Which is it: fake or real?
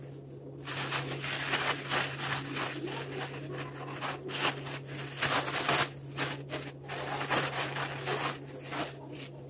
real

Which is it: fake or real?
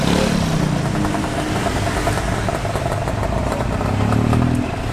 real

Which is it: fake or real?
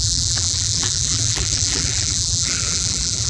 fake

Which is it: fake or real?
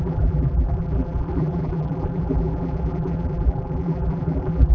fake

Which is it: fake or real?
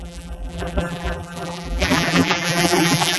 fake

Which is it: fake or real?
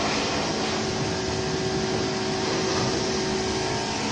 real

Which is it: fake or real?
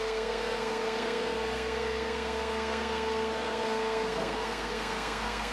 fake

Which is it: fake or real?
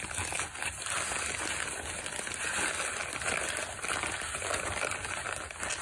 real